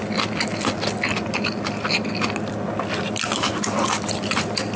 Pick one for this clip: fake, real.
real